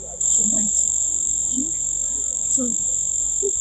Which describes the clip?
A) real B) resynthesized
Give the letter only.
B